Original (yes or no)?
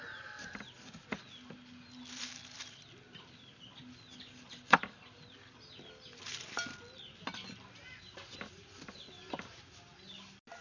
yes